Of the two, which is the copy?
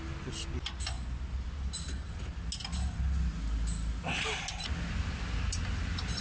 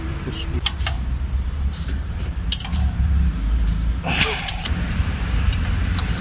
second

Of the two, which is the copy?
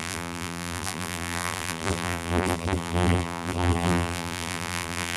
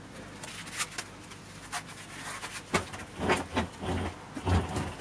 first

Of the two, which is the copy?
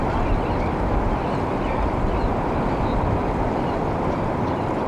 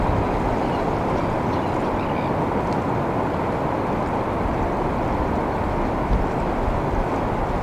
first